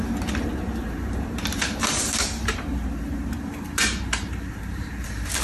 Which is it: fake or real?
fake